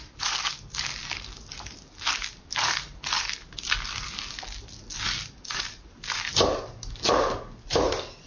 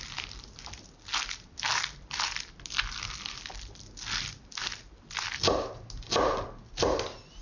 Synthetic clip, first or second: first